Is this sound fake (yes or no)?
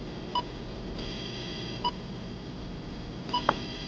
no